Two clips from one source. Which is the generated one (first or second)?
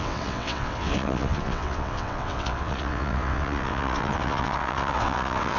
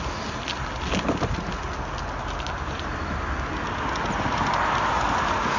first